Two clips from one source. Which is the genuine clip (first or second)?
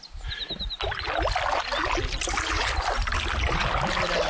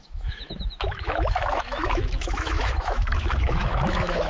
first